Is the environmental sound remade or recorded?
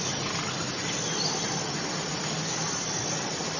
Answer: recorded